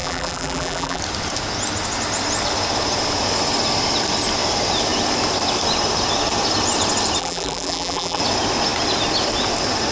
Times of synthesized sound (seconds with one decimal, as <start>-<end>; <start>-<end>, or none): 0.0-1.0; 7.2-8.2